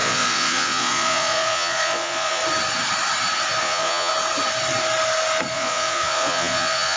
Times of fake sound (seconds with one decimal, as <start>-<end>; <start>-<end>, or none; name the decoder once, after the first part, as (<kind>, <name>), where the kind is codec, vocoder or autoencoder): 0.0-2.4 (vocoder, Vocos); 3.6-4.1; 5.5-7.0